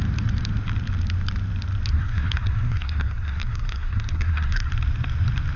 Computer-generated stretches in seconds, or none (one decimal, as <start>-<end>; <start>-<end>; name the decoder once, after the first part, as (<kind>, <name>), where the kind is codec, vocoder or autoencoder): 1.9-4.7 (codec, SNAC)